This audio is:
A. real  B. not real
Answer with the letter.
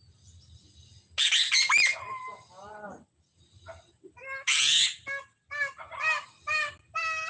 A